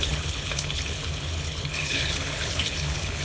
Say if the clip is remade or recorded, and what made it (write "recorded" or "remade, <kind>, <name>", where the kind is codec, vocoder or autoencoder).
remade, codec, HILCodec